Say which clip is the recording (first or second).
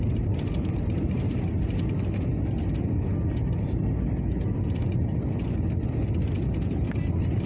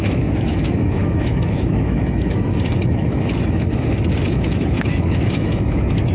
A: first